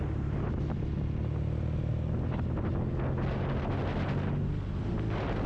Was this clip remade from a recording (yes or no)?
no